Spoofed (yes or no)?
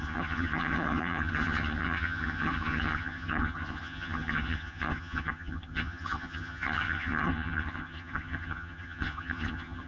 yes